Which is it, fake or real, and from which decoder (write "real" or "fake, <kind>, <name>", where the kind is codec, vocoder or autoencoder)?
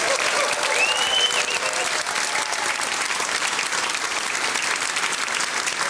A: real